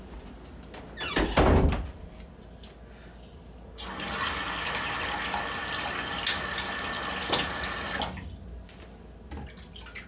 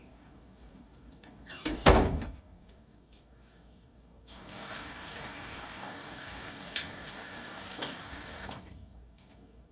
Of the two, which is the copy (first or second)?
second